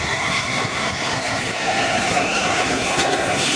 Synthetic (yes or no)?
yes